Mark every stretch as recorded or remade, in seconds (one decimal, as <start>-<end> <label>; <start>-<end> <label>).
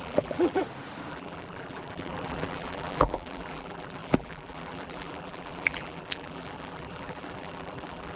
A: 0.0-0.6 remade; 0.6-1.1 recorded; 1.1-8.2 remade